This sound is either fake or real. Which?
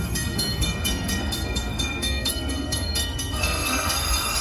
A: fake